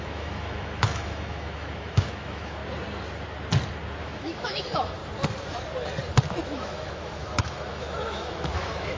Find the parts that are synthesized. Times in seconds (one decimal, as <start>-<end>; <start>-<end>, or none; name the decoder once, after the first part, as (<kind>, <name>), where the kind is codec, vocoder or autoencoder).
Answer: 0.0-2.6 (autoencoder, DAC-VAE); 4.0-5.0; 6.4-9.0

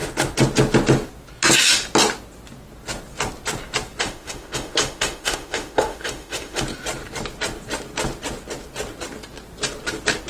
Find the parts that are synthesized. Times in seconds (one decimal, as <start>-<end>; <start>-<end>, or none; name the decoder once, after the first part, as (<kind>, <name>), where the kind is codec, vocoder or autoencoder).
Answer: 4.0-6.6 (autoencoder, DAC-VAE)

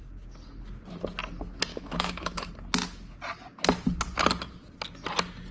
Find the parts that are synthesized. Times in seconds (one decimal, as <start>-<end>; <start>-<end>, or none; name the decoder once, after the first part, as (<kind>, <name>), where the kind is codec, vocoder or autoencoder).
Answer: 1.7-2.5 (autoencoder, DAC-VAE)

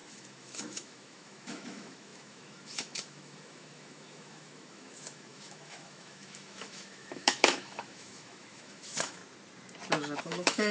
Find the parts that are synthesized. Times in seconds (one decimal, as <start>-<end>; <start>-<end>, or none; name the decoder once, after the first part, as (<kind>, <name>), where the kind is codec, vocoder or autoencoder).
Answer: 0.0-9.2 (autoencoder, DAC-VAE); 10.2-10.7

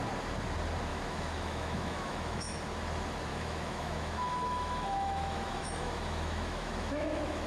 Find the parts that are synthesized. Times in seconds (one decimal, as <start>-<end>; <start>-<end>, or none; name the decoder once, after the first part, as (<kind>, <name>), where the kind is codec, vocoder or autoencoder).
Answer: 0.9-2.6 (autoencoder, DAC-VAE); 3.3-7.5

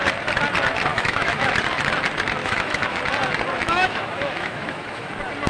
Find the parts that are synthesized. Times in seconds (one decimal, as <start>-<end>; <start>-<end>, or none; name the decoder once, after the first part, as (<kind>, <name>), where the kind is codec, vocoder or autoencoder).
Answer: 0.9-1.5 (autoencoder, DAC-VAE); 2.4-3.0; 3.6-5.1